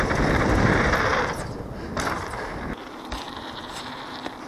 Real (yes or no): no